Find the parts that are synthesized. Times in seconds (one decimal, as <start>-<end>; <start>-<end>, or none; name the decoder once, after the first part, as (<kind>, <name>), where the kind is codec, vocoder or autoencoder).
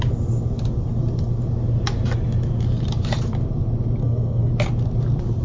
4.0-4.5 (codec, SNAC)